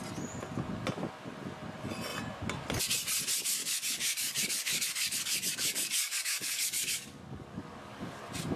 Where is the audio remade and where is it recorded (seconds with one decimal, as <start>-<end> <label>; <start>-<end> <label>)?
0.0-3.6 recorded; 3.6-8.2 remade; 8.2-8.6 recorded